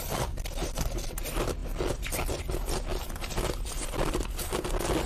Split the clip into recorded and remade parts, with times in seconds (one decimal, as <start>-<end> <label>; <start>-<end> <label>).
0.0-5.1 recorded

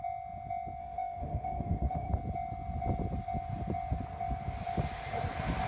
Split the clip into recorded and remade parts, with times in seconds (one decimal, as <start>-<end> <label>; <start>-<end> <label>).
0.0-0.8 recorded; 0.8-2.1 remade; 2.1-5.7 recorded

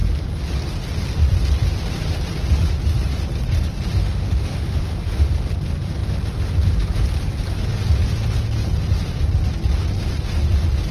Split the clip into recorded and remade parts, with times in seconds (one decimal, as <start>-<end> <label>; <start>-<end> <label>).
0.0-4.0 recorded; 4.0-4.8 remade; 4.8-10.9 recorded

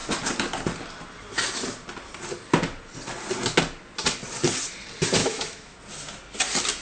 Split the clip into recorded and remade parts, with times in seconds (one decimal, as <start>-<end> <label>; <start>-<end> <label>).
0.0-5.2 recorded; 5.2-5.8 remade; 5.8-6.8 recorded

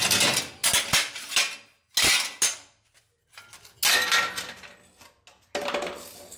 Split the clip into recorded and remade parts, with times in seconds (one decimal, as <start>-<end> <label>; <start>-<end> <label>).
0.0-6.4 recorded